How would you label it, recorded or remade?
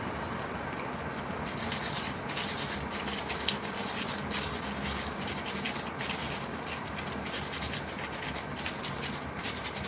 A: recorded